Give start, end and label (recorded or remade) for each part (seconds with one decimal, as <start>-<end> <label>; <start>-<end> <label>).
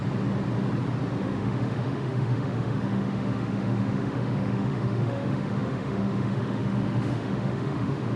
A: 0.0-1.2 recorded; 1.2-8.2 remade